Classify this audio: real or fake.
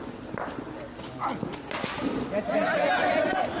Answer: real